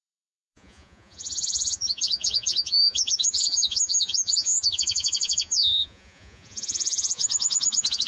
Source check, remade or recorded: remade